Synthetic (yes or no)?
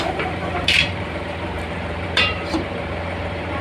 yes